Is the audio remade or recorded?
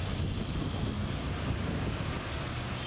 recorded